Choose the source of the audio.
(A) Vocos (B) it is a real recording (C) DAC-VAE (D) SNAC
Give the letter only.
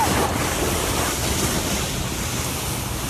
B